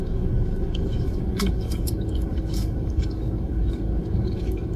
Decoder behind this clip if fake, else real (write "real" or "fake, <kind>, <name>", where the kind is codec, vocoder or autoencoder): fake, codec, DAC